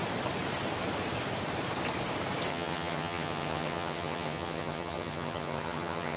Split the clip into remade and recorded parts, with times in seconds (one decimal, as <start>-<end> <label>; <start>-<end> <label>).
0.0-2.5 recorded; 2.5-6.2 remade